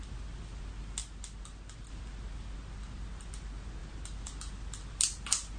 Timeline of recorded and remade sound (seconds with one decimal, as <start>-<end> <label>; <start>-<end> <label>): 0.0-5.6 recorded